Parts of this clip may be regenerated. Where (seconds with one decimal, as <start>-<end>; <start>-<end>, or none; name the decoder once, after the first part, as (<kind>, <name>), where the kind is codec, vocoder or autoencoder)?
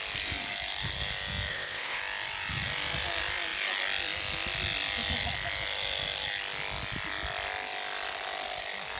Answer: 1.5-2.0 (codec, ZipCodec)